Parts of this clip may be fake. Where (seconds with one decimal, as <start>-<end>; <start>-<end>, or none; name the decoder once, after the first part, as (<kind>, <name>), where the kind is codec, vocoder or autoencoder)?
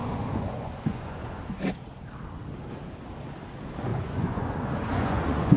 0.0-1.4 (vocoder, Vocos); 3.9-5.6